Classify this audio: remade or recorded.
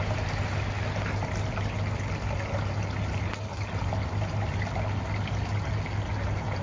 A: recorded